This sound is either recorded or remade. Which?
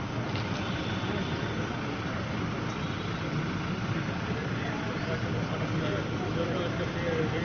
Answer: recorded